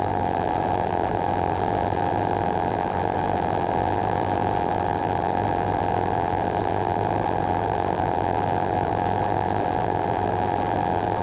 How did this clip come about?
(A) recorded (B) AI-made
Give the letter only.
B